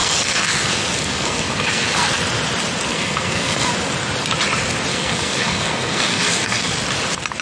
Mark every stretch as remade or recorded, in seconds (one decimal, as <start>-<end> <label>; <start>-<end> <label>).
0.0-2.2 remade; 2.2-2.9 recorded; 2.9-3.7 remade; 3.7-4.9 recorded; 4.9-6.7 remade; 6.7-7.4 recorded